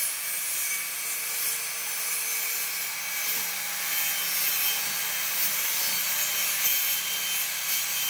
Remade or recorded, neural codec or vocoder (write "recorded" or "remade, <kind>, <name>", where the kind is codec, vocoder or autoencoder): recorded